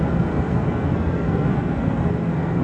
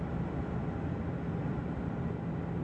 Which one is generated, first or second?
first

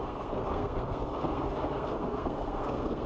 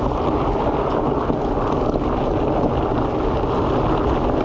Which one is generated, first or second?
first